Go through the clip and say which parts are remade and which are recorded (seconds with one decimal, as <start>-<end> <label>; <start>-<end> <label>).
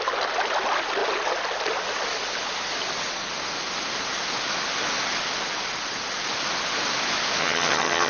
0.0-7.4 recorded; 7.4-8.1 remade